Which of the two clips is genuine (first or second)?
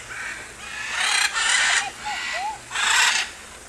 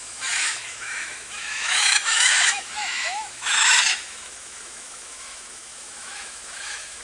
first